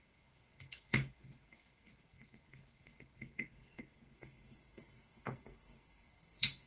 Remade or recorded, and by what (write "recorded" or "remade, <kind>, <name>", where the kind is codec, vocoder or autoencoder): remade, codec, SNAC